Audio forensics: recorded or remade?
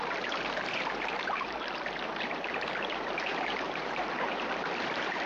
remade